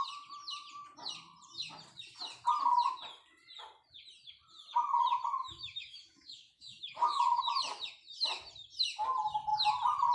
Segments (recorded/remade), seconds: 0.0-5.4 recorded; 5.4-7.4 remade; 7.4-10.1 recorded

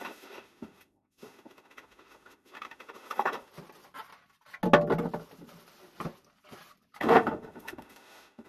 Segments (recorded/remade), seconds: 0.0-3.5 remade; 3.5-7.0 recorded; 7.0-8.5 remade

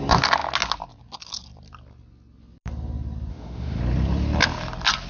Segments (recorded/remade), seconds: 0.0-3.3 recorded; 3.3-3.8 remade; 3.8-5.1 recorded